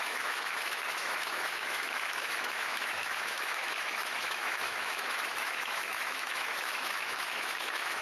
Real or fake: fake